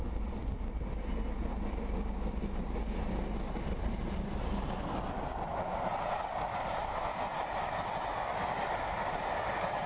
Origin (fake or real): real